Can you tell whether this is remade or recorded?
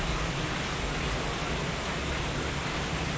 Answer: recorded